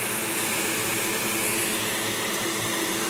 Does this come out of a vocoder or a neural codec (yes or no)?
no